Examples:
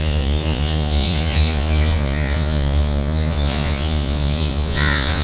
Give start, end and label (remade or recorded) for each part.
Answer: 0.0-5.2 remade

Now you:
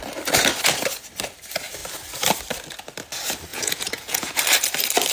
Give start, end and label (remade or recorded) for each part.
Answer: 0.0-3.5 recorded; 3.5-4.4 remade; 4.4-5.1 recorded

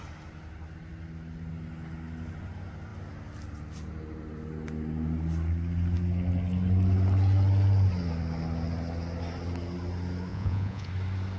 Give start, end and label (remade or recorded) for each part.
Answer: 0.0-10.3 recorded; 10.3-10.9 remade; 10.9-11.4 recorded

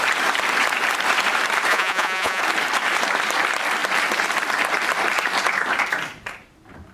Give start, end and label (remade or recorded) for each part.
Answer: 0.0-1.7 recorded; 1.7-2.4 remade; 2.4-6.9 recorded

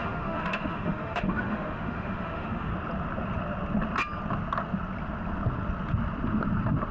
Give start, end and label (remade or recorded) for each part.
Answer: 0.0-2.7 remade; 2.7-6.9 recorded

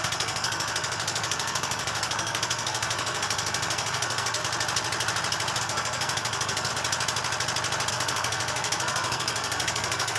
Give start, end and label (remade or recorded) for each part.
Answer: 0.0-4.4 remade; 4.4-5.6 recorded; 5.6-6.7 remade; 6.7-7.9 recorded; 7.9-10.2 remade

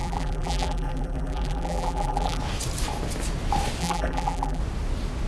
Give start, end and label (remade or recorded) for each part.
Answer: 0.0-2.4 remade; 2.4-3.8 recorded; 3.8-4.6 remade; 4.6-5.3 recorded